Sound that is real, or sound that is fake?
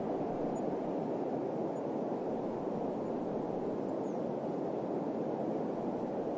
real